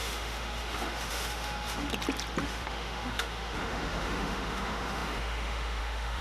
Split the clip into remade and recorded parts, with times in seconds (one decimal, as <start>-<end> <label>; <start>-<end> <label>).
0.0-1.9 remade; 1.9-2.4 recorded; 2.4-6.2 remade